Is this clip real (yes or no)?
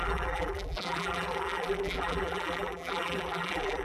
no